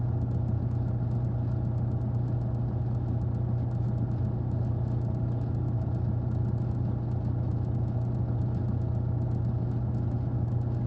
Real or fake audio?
real